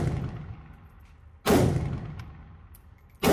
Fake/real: real